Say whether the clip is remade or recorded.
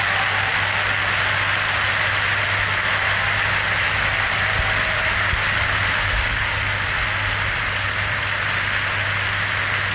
recorded